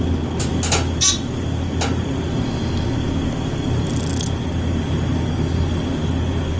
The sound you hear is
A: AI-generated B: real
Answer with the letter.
B